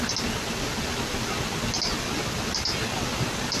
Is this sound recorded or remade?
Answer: recorded